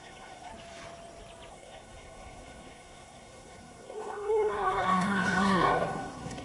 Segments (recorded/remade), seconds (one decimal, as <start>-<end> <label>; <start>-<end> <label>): 0.0-0.5 remade; 0.5-1.5 recorded; 1.5-6.4 remade